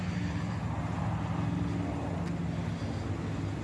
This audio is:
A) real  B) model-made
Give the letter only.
A